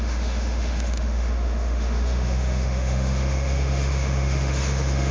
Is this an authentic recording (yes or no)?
no